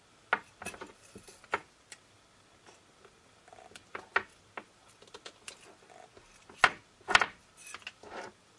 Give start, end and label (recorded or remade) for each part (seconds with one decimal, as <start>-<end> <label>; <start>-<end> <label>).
0.0-8.6 recorded

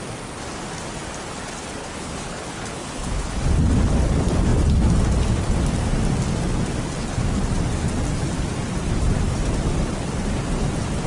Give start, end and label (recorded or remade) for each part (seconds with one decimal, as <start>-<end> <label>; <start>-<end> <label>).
0.0-1.8 recorded; 1.8-3.3 remade; 3.3-11.1 recorded